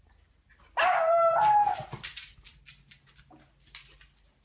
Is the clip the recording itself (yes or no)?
yes